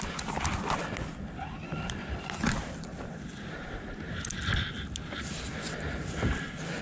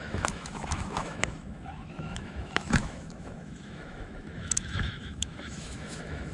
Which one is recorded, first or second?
first